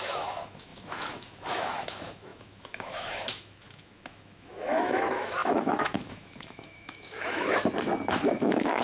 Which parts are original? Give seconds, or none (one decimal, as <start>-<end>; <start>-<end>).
7.6-8.1